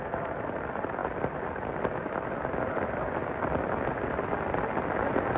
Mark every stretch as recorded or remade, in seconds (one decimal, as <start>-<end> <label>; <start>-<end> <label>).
0.0-5.4 recorded